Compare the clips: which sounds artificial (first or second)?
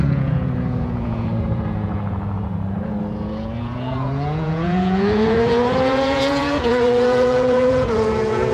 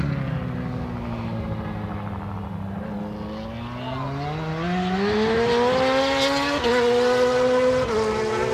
first